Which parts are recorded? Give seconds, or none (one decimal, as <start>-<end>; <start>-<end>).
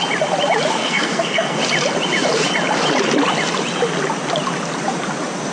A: 0.0-0.8; 1.6-5.5